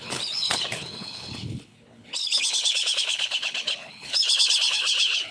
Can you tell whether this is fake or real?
fake